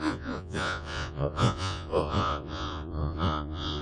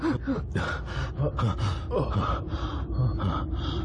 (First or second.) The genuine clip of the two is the second